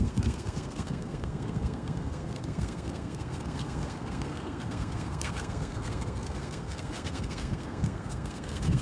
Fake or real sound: fake